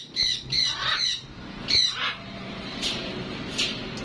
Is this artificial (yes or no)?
no